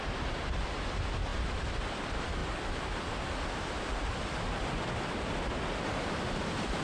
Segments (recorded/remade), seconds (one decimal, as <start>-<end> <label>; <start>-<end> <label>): 0.0-2.4 remade; 2.4-5.6 recorded; 5.6-6.8 remade